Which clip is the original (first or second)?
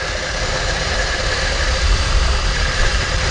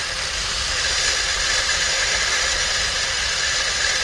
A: second